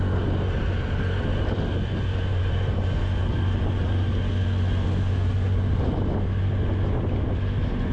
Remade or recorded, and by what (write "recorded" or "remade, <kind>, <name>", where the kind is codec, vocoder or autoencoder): recorded